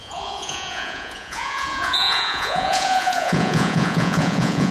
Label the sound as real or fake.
fake